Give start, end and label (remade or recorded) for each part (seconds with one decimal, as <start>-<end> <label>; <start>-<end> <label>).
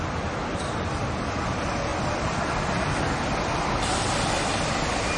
0.0-5.2 remade